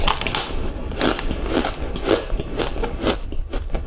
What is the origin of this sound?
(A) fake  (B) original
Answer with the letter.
B